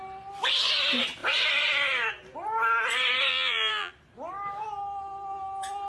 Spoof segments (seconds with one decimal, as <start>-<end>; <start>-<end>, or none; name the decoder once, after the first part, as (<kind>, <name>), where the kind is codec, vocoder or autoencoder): 3.3-3.9 (vocoder, BigVGAN v2)